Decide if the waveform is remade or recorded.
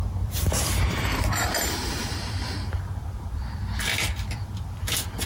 remade